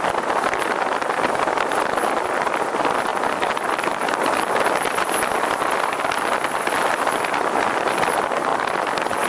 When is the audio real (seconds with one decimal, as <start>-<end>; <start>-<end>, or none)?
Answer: 0.0-3.1; 7.2-9.3